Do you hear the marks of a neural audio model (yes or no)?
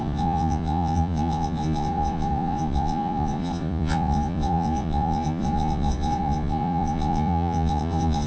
yes